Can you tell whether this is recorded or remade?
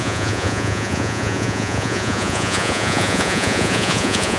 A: remade